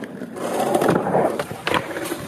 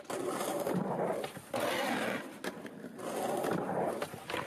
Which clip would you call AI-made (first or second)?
first